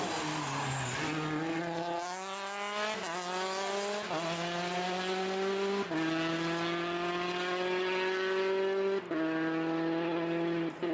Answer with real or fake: real